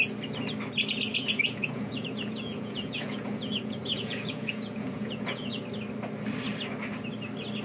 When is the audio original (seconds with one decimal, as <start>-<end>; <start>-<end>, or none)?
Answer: 0.0-1.1; 5.6-7.6